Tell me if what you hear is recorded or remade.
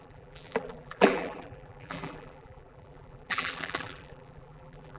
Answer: remade